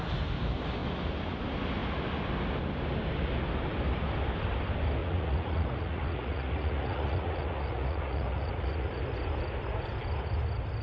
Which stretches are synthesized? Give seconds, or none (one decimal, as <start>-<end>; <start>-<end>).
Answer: 5.0-9.0